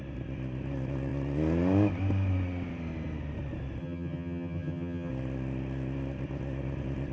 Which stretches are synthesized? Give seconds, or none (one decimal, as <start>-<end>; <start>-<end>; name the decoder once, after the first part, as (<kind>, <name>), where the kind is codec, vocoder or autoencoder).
3.8-5.1 (vocoder, HiFi-GAN)